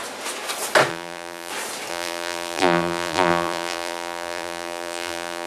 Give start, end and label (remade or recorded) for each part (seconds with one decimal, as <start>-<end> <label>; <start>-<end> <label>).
0.0-0.9 recorded; 0.9-1.5 remade; 1.5-1.9 recorded; 1.9-5.5 remade